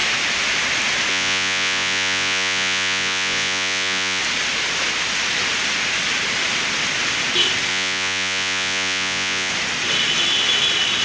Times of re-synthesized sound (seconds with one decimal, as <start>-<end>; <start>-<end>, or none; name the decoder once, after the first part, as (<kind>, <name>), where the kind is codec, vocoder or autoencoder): 1.1-4.2 (vocoder, Vocos); 7.7-9.5